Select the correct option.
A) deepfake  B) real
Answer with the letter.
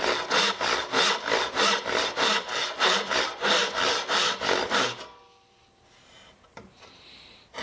B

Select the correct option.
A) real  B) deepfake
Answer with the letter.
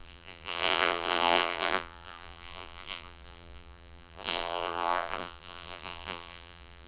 B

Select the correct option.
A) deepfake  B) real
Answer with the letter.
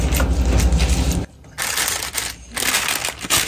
B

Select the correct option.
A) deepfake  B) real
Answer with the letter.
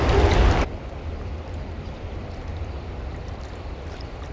A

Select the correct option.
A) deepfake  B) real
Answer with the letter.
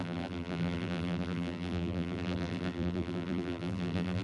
A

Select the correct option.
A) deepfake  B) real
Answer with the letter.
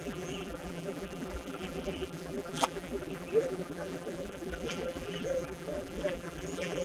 A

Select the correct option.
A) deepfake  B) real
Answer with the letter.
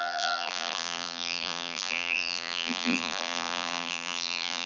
A